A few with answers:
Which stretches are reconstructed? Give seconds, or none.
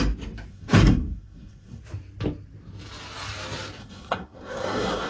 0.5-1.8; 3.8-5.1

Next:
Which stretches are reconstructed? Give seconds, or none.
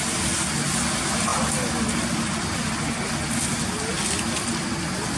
none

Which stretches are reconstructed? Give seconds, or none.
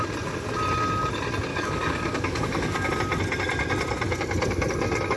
1.5-2.9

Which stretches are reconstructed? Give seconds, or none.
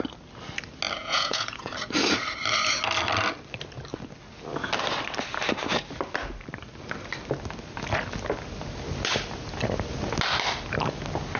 1.0-1.7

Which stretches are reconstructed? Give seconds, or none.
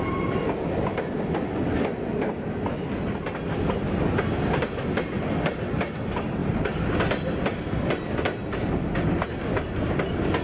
none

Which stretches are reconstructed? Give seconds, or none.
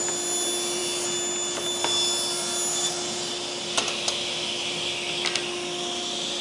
none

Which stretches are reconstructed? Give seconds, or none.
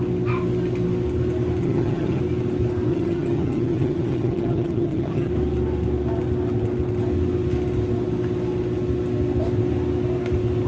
1.6-2.2; 2.9-5.3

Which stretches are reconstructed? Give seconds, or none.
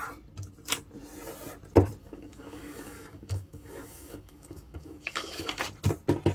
2.0-5.6